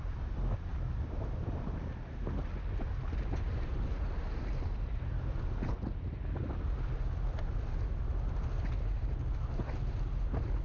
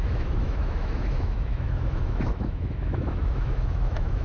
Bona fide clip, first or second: first